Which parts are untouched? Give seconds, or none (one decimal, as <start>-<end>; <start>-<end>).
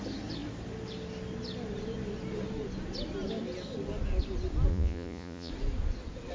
0.0-4.7; 5.5-6.3